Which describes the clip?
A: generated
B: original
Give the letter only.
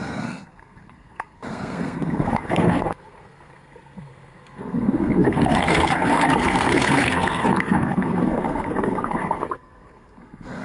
A